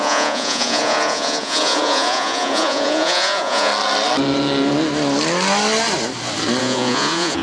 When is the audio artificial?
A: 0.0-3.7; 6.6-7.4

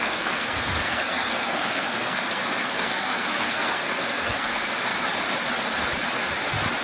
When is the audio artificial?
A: 0.0-4.9